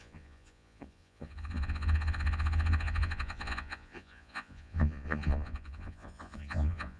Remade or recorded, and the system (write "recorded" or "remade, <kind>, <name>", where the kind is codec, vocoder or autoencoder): remade, vocoder, Vocos